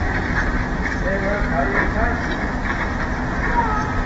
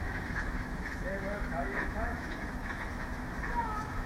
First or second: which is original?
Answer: first